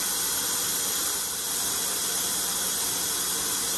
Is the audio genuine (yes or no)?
yes